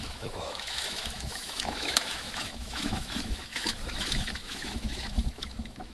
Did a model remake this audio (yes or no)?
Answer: yes